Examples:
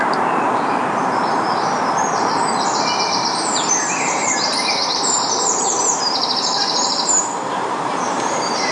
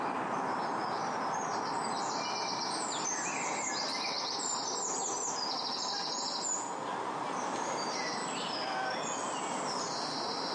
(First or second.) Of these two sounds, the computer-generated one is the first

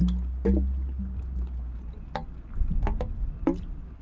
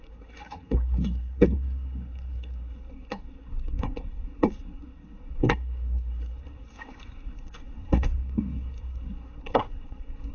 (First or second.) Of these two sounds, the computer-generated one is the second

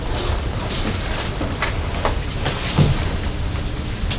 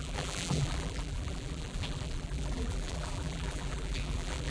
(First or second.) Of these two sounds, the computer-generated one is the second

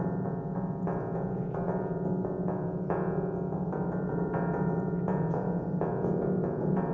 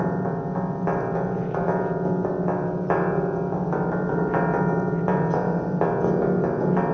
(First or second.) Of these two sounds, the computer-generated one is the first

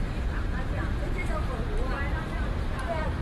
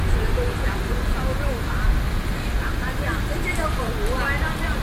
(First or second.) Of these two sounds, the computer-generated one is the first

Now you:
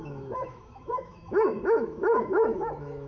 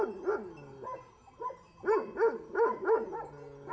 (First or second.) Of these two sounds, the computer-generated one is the first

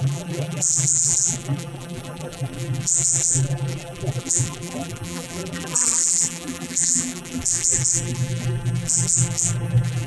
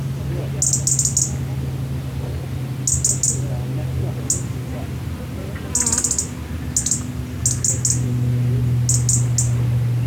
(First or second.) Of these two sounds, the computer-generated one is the first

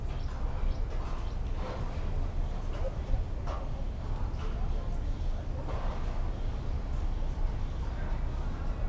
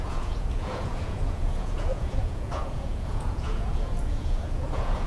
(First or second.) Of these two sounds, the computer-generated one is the second